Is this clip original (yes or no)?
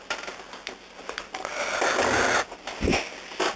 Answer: yes